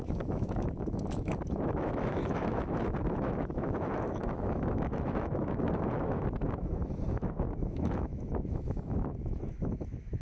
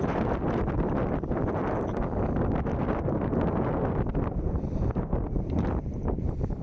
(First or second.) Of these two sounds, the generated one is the first